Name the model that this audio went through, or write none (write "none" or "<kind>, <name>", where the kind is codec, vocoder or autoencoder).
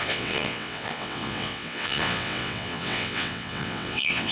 vocoder, WaveNeXt